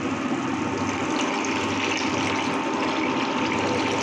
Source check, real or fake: real